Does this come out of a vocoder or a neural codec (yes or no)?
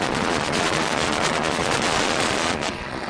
yes